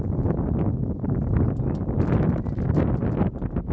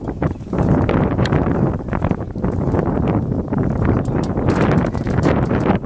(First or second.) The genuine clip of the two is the first